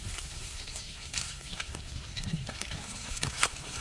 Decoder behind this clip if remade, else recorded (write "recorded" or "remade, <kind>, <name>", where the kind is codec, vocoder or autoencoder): remade, codec, SNAC